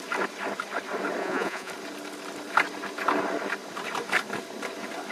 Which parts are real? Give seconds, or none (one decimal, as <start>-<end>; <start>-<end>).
0.0-1.2; 1.7-5.1